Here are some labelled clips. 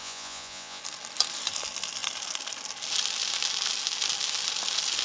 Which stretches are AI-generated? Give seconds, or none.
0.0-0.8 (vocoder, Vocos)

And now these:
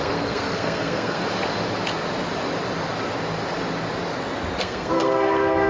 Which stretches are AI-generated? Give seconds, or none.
0.0-1.2 (codec, SNAC); 4.6-5.7

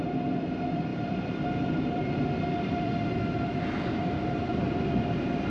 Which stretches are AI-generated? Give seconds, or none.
0.9-3.0 (vocoder, BigVGAN v2); 4.0-4.5

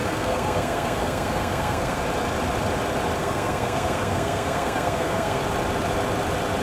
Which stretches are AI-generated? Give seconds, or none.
0.0-2.0 (codec, SNAC); 3.2-5.4

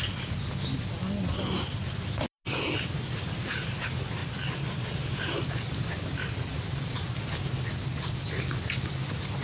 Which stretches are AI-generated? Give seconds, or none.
none

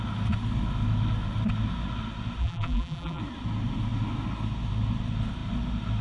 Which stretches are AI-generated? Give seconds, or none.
2.4-3.2 (vocoder, BigVGAN v2)

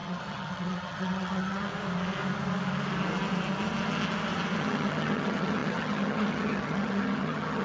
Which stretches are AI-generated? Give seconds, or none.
0.0-1.7 (vocoder, HiFi-GAN); 4.6-7.6

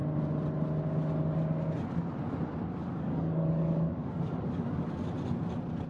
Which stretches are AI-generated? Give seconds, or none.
2.8-4.9 (codec, DAC)